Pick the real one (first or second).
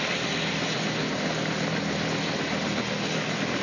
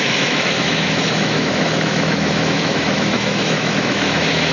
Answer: first